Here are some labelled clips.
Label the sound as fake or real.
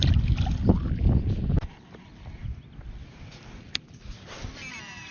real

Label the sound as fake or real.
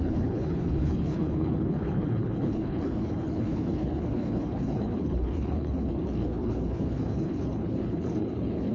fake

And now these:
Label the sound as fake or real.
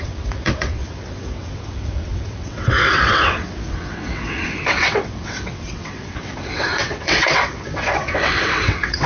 fake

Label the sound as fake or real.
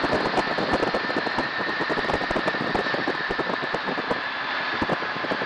real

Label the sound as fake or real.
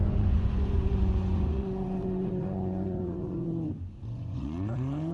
fake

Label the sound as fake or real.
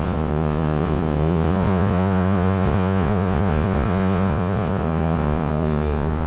fake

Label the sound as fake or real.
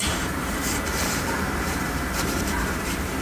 fake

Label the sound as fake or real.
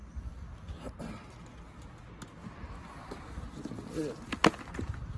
real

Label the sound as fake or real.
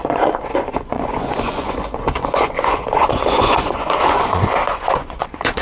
fake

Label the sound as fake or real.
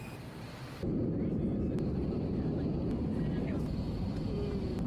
fake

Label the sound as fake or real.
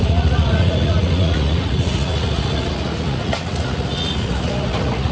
fake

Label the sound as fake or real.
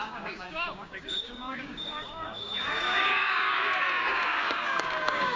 fake